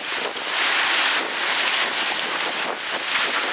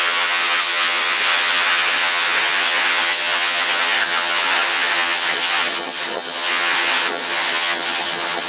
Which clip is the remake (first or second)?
second